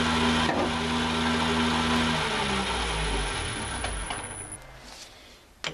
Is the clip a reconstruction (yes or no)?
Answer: no